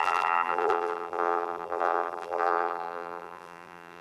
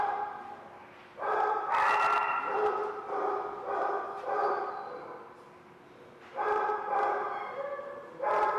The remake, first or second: first